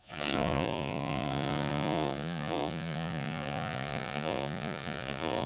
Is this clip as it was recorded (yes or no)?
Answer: no